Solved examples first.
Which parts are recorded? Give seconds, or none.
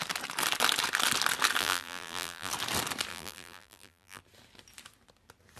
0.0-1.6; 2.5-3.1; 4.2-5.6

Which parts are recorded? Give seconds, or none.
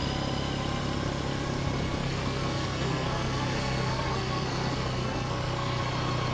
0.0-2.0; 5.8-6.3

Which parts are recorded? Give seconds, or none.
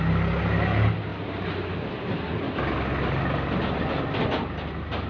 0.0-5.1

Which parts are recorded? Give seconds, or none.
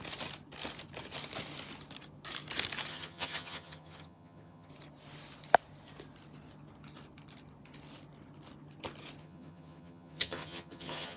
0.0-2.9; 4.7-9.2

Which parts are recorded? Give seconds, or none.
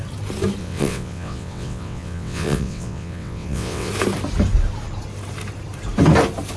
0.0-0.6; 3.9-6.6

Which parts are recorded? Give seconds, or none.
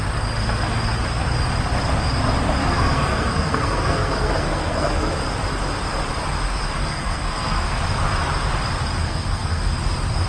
0.0-2.6; 5.1-6.8; 7.8-9.0; 9.8-10.3